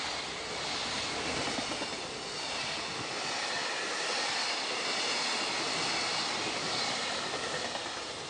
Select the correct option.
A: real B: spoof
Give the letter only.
A